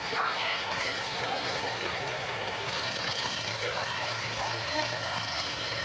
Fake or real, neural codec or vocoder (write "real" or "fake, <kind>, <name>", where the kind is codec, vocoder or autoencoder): fake, codec, SNAC